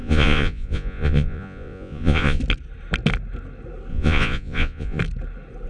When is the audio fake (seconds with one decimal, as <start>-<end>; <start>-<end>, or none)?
0.0-2.4; 3.9-5.0